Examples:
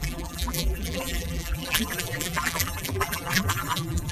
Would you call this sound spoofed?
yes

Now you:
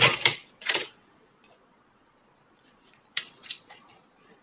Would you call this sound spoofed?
yes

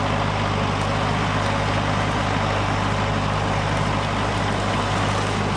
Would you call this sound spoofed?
no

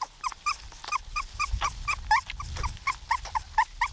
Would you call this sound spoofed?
no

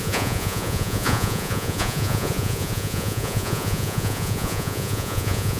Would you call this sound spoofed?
yes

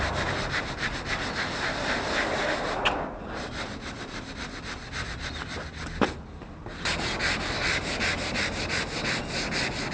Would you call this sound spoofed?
no